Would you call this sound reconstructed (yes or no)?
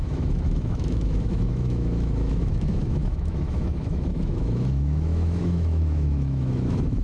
yes